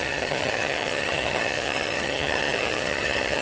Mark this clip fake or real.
fake